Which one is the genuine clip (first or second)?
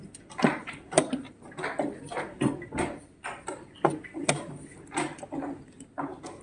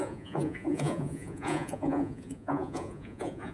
first